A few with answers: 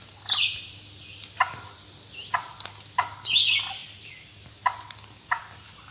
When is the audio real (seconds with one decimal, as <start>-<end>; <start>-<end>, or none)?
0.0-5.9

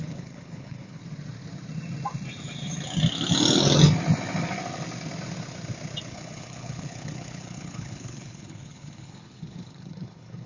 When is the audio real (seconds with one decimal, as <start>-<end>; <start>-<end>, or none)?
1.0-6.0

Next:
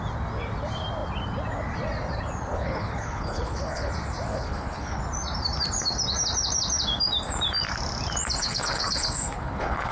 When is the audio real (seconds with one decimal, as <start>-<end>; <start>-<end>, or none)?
0.0-2.5; 3.9-4.3; 5.0-8.4

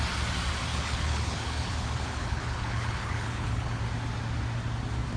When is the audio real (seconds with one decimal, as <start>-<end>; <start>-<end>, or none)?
0.0-0.7; 3.8-5.2

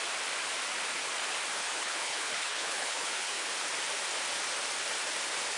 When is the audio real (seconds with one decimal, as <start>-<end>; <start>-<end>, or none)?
0.0-1.5; 3.5-5.6

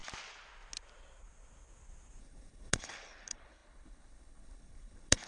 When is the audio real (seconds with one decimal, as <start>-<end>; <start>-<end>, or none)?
0.0-2.2